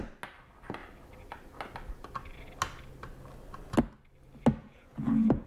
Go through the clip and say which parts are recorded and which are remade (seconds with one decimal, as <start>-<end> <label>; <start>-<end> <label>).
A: 0.0-4.6 recorded; 4.6-5.5 remade